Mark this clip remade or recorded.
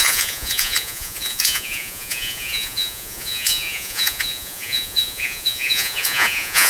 remade